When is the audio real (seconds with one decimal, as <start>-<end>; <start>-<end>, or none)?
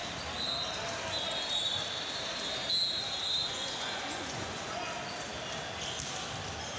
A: 0.0-3.4; 4.8-6.8